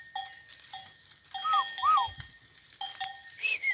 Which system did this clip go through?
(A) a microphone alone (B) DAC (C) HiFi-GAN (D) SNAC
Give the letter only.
A